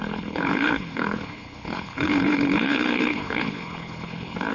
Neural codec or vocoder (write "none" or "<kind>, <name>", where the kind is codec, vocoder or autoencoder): codec, HILCodec